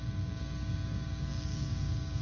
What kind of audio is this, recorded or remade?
remade